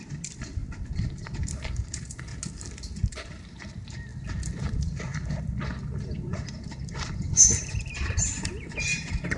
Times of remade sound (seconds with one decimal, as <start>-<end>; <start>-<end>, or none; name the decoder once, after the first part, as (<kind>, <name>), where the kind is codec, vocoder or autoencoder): 0.0-0.6 (vocoder, BigVGAN v2); 1.4-2.3; 3.1-9.4